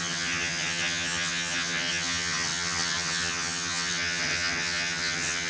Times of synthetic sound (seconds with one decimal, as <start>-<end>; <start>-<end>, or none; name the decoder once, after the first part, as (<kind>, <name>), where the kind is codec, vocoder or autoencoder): 0.0-5.5 (vocoder, HiFi-GAN)